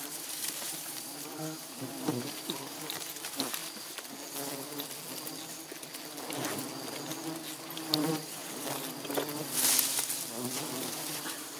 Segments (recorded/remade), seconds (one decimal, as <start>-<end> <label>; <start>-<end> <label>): 0.0-3.6 remade; 3.6-8.0 recorded; 8.0-8.4 remade; 8.4-10.8 recorded; 10.8-11.6 remade